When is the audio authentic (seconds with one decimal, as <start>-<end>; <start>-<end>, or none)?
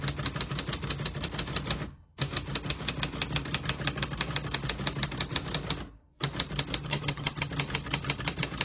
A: 0.0-6.8; 7.5-8.6